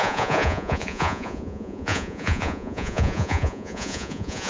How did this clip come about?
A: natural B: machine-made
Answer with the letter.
B